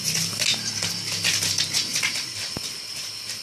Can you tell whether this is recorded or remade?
recorded